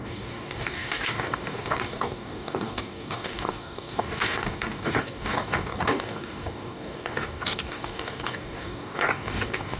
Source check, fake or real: fake